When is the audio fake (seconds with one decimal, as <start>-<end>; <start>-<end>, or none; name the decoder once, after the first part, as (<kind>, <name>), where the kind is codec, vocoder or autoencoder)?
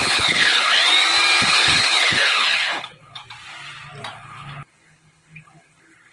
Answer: 0.0-0.8 (codec, HILCodec); 1.5-3.2; 4.1-6.1